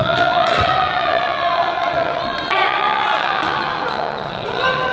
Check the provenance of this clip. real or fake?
fake